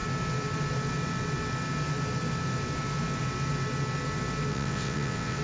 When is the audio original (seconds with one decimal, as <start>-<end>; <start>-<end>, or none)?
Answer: 0.0-4.5